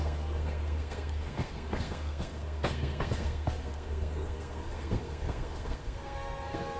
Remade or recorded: remade